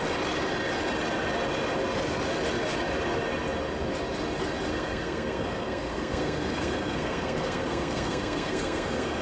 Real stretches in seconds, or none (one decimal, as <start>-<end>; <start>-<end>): 0.0-4.7